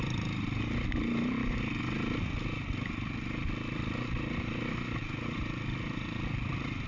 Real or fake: real